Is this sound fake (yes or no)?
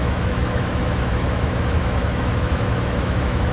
yes